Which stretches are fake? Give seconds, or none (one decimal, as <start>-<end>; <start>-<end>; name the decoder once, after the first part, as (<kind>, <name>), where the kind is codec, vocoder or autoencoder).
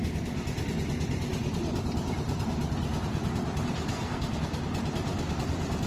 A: 3.9-4.6 (codec, SNAC)